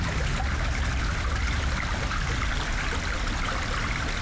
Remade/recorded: recorded